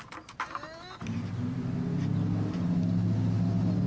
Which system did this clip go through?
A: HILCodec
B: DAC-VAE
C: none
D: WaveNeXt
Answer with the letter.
C